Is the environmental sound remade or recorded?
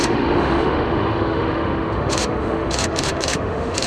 remade